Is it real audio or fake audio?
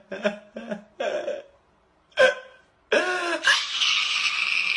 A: real